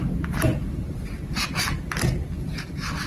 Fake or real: real